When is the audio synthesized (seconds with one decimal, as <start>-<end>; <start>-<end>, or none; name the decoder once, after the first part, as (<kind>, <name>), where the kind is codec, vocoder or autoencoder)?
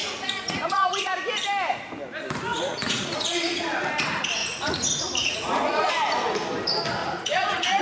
0.0-1.1 (vocoder, Vocos); 2.5-3.9; 4.4-5.9; 7.0-7.8